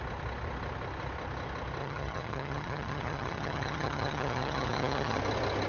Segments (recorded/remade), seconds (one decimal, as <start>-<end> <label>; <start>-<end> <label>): 0.0-1.8 recorded; 1.8-5.2 remade; 5.2-5.7 recorded